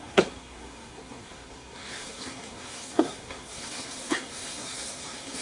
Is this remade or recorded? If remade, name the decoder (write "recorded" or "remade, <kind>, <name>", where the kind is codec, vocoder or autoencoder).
remade, codec, SNAC